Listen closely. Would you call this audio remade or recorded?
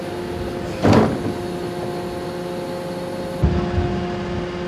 recorded